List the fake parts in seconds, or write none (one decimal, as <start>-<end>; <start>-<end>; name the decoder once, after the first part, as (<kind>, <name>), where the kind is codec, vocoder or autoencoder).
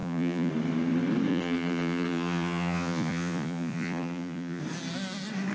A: 0.0-0.5 (vocoder, Vocos); 1.3-4.6